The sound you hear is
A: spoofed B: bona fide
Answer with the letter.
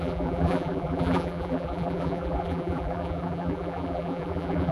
A